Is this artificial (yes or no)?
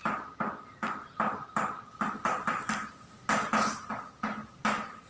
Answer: no